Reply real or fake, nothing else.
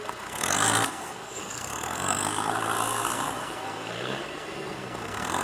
fake